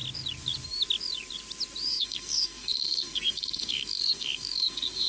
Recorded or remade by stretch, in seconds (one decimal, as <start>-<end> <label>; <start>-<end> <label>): 0.0-1.9 recorded; 1.9-5.1 remade